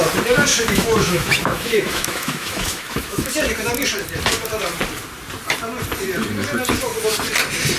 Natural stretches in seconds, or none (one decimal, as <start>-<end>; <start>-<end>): 0.0-0.5; 3.3-7.8